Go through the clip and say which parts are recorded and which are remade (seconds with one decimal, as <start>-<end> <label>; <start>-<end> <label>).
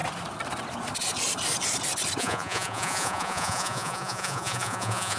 0.0-2.2 recorded; 2.2-5.2 remade